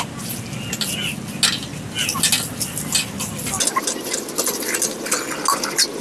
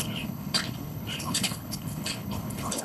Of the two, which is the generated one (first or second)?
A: second